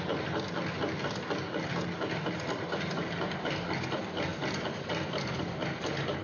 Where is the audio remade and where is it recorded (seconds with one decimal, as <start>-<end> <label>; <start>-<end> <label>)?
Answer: 0.0-6.2 recorded